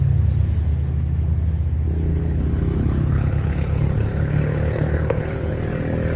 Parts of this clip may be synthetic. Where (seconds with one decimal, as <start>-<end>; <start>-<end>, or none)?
2.1-5.5